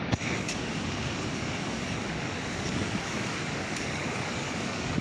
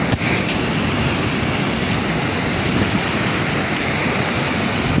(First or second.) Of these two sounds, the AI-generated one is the first